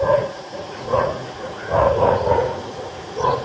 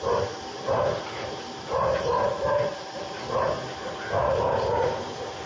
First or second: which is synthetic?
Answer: first